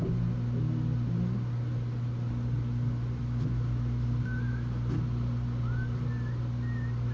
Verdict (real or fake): real